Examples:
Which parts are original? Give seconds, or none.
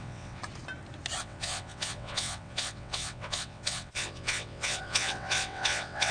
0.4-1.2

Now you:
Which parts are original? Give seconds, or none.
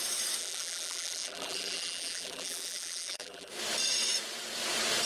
0.0-0.4; 3.5-5.1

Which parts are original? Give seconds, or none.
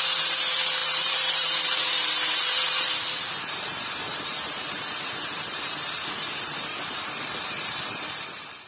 none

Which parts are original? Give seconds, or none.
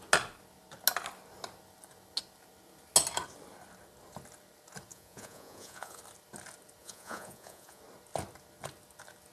0.0-4.9; 6.0-6.8; 7.8-9.3